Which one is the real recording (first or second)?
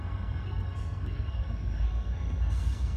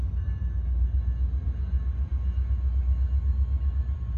second